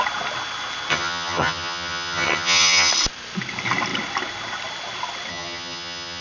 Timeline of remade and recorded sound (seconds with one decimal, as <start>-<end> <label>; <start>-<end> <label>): 0.0-0.9 recorded; 0.9-2.9 remade; 2.9-5.3 recorded; 5.3-6.2 remade

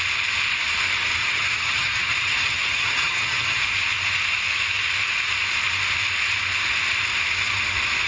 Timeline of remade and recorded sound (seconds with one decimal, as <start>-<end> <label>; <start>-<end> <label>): 0.0-1.2 recorded; 1.2-3.6 remade; 3.6-8.1 recorded

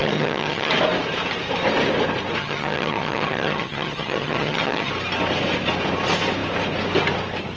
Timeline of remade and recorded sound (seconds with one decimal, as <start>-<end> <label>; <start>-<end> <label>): 0.0-0.7 remade; 0.7-2.4 recorded; 2.4-4.9 remade; 4.9-7.6 recorded

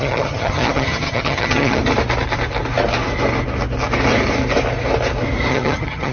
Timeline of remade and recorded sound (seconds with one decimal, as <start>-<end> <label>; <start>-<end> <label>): 0.0-1.8 remade; 1.8-5.5 recorded; 5.5-6.1 remade

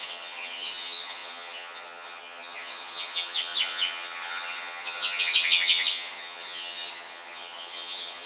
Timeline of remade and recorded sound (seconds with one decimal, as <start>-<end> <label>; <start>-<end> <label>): 0.0-8.3 remade